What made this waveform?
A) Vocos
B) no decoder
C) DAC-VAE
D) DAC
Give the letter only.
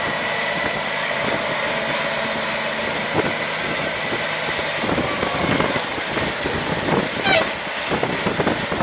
B